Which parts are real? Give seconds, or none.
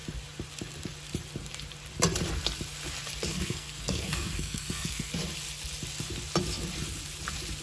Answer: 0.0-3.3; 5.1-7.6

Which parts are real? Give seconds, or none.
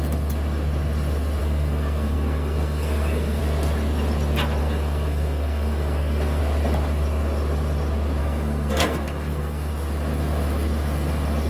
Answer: 0.0-1.4; 3.4-4.6; 6.4-8.2; 9.7-11.5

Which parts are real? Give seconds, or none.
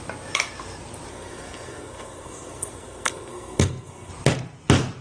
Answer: 0.0-1.1; 4.1-5.0